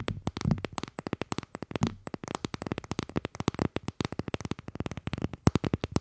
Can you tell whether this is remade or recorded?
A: recorded